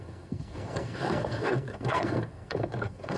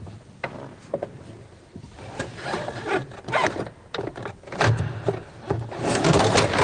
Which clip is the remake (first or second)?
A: first